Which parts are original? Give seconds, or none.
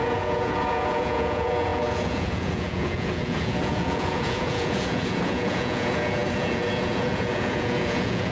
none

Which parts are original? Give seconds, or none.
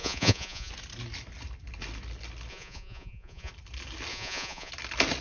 0.7-2.5; 3.5-4.1; 4.7-5.2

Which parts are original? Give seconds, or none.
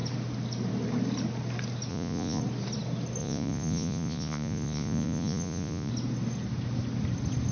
0.0-1.9; 2.4-3.2; 5.9-7.5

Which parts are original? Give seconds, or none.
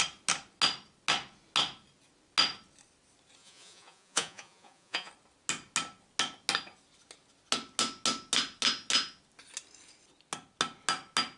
0.0-3.4; 5.1-11.4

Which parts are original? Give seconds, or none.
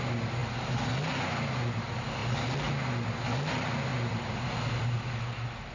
0.0-5.7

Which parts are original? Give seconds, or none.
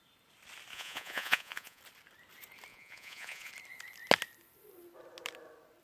0.0-0.7; 1.8-2.7; 3.5-5.8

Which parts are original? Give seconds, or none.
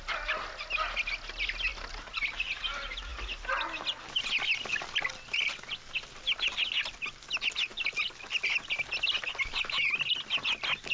0.0-10.9